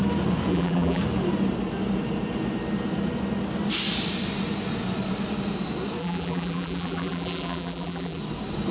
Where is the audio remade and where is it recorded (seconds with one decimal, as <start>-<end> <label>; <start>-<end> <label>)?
0.0-0.5 recorded; 0.5-1.0 remade; 1.0-6.0 recorded; 6.0-8.2 remade; 8.2-8.7 recorded